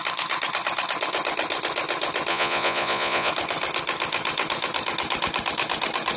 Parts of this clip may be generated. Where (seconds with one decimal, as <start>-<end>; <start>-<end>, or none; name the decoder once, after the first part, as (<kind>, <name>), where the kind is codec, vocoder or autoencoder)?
2.3-3.3 (vocoder, Vocos)